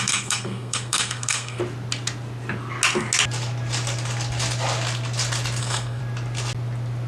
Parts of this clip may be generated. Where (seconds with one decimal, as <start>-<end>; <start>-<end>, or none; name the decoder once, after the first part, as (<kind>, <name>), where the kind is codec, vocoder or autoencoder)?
0.0-1.6 (codec, SNAC); 5.6-6.0